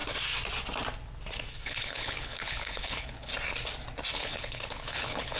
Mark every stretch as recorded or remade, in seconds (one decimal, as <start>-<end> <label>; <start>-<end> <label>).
0.0-1.5 recorded; 1.5-3.3 remade; 3.3-4.2 recorded; 4.2-5.4 remade